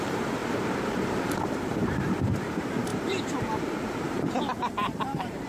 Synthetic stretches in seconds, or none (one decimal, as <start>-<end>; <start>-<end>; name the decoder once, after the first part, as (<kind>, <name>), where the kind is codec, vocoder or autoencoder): 0.0-5.5 (vocoder, BigVGAN v2)